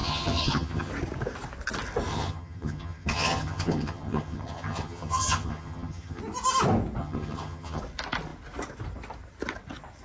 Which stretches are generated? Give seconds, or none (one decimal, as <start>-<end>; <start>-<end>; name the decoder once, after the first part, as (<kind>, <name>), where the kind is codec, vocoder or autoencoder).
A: 0.0-0.9 (vocoder, HiFi-GAN); 2.1-6.2; 7.0-7.8